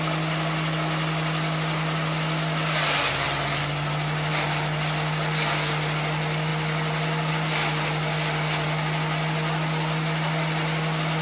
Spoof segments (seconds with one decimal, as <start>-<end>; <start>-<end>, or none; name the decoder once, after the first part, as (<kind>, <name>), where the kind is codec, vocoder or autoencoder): none